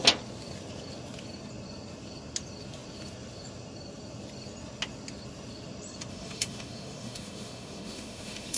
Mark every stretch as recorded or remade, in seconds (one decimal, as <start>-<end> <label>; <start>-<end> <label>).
0.0-6.1 recorded; 6.1-8.6 remade